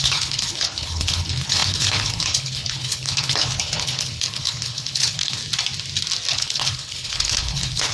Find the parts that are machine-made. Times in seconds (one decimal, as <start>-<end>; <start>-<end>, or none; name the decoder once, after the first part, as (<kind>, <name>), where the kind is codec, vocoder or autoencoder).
0.0-5.4 (codec, HILCodec); 6.3-7.9